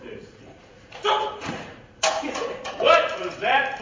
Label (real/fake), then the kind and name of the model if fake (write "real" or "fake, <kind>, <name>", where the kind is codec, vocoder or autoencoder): fake, vocoder, Vocos